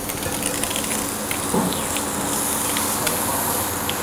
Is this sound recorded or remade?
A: recorded